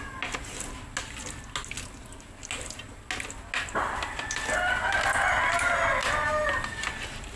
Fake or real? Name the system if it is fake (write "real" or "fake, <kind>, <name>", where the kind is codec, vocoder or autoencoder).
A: real